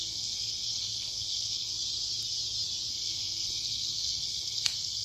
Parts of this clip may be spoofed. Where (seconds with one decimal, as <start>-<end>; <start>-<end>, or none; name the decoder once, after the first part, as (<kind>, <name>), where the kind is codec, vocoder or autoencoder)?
0.0-1.7 (codec, SNAC); 2.9-5.0